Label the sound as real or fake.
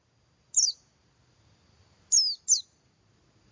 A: real